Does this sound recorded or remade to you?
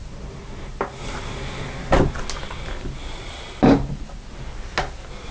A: recorded